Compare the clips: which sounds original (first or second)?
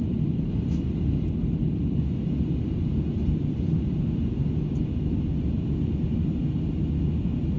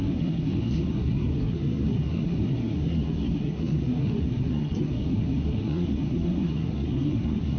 first